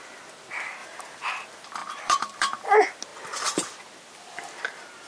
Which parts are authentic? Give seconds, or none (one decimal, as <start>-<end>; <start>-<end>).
0.0-0.8; 1.3-1.8; 2.6-5.1